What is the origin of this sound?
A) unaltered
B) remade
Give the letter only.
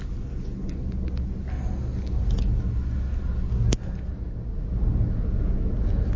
A